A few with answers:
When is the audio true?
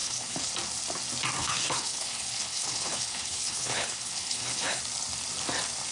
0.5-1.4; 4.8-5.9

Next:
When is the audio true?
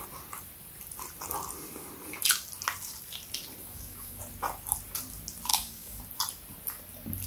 0.0-3.6; 4.2-5.5; 6.0-7.3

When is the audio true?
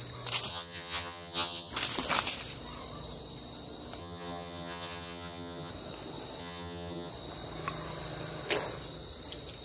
0.0-0.5; 1.7-4.0; 5.7-6.4; 7.1-9.6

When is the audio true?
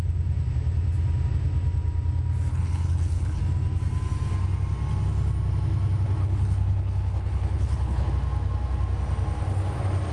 0.0-2.5; 3.4-6.2; 8.1-10.1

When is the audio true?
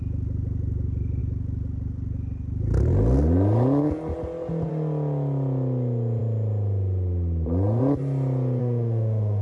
0.0-8.6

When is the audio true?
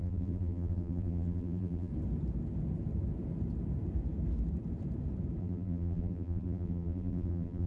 1.9-5.4